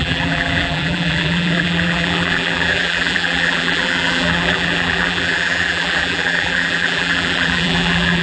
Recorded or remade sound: remade